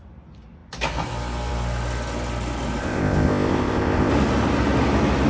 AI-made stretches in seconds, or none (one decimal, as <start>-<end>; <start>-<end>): 2.8-4.1